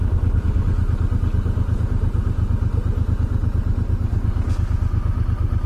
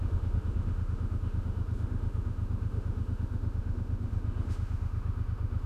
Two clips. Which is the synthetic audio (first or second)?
second